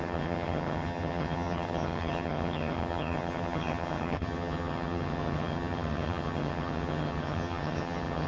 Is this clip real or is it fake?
fake